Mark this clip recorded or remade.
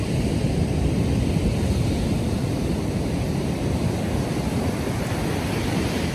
recorded